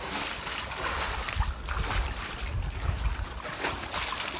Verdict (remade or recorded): recorded